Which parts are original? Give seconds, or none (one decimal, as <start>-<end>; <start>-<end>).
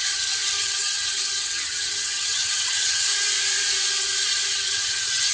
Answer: 3.1-4.5